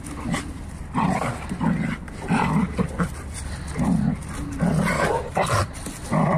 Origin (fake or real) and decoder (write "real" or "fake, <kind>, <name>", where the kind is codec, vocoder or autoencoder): real